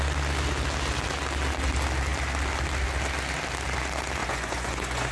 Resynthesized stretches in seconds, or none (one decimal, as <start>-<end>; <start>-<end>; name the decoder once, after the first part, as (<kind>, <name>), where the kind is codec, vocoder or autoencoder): 4.2-5.1 (vocoder, Vocos)